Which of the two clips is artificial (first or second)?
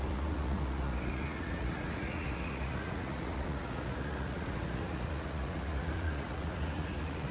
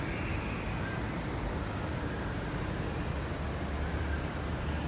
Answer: first